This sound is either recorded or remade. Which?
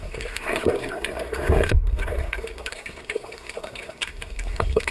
remade